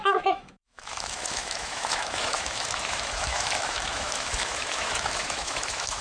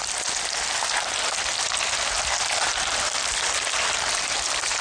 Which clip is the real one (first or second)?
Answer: second